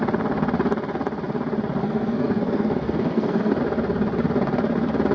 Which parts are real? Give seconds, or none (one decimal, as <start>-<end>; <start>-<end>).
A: 0.0-1.8; 3.6-5.1